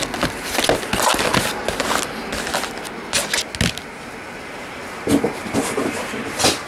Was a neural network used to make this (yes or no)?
no